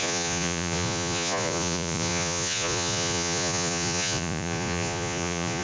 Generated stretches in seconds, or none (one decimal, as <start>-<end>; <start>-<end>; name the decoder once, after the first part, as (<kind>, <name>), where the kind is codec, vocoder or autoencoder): 0.0-5.6 (vocoder, Vocos)